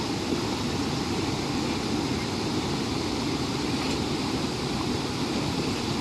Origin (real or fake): real